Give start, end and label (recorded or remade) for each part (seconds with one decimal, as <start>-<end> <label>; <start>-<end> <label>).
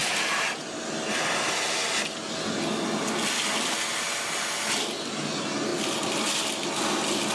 0.0-7.3 recorded